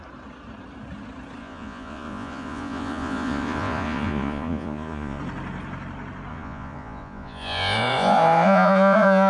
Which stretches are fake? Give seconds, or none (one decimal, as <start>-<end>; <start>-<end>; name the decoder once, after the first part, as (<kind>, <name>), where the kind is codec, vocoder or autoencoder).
1.4-5.2 (vocoder, Vocos); 6.3-9.3